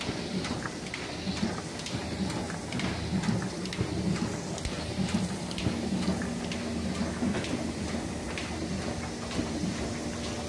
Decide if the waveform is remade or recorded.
recorded